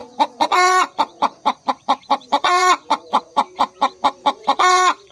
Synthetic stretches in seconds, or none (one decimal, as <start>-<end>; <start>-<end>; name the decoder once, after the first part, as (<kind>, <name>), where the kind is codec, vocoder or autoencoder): 0.0-5.1 (vocoder, Vocos)